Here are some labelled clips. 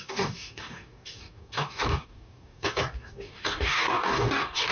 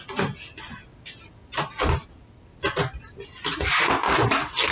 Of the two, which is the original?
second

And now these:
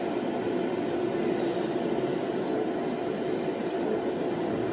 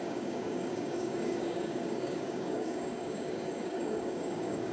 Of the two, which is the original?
first